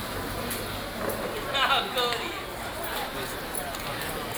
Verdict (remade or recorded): recorded